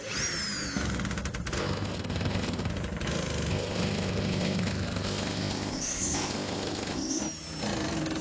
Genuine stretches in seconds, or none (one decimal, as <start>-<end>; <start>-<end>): 0.0-1.6; 2.7-3.5; 7.2-8.2